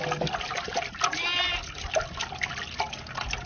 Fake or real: real